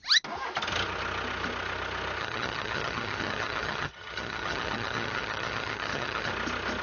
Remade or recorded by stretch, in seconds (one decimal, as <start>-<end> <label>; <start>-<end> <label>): 0.0-2.2 recorded; 2.2-6.3 remade; 6.3-6.8 recorded